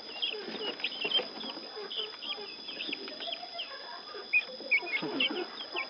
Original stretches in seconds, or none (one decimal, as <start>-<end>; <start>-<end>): 0.0-5.9